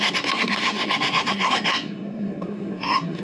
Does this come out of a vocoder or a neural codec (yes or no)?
yes